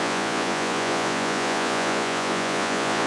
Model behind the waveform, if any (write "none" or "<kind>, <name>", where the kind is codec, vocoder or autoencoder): vocoder, Vocos